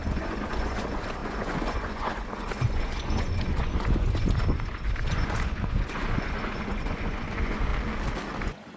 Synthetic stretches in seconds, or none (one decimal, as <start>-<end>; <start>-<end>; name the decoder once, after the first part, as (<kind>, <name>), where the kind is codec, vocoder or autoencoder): 0.0-7.7 (vocoder, Vocos); 8.4-8.8